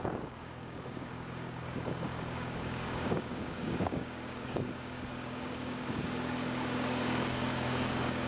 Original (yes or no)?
no